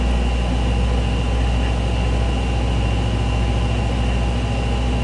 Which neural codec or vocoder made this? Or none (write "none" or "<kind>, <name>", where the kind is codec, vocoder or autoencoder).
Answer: none